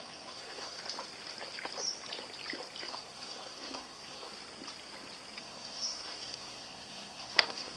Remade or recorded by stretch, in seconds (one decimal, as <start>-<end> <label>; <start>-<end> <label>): 0.0-0.8 remade; 0.8-2.9 recorded; 2.9-4.3 remade; 4.3-5.4 recorded; 5.4-7.8 remade